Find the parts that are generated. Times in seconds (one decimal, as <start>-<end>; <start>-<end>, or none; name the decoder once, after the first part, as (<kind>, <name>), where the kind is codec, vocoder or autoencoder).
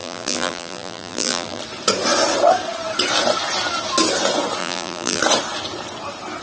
0.0-1.6 (vocoder, BigVGAN v2); 4.6-5.2